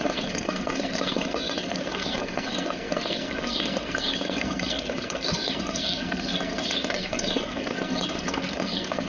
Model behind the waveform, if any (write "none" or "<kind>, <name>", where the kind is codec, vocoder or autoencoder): codec, SNAC